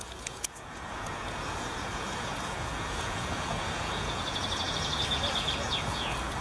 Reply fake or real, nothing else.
fake